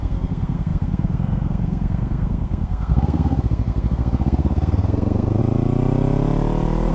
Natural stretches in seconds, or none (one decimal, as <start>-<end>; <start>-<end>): 5.4-6.9